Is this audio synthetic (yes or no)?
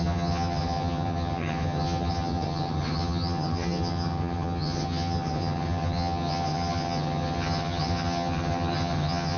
yes